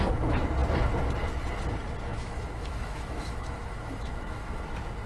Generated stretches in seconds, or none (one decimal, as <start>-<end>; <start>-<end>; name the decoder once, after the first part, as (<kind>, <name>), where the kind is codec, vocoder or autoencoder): 2.1-4.6 (autoencoder, DAC-VAE)